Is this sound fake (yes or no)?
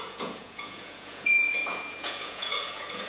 yes